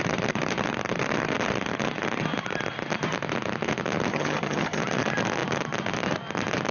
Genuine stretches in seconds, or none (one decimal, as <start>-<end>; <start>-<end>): 0.0-4.1; 4.8-6.7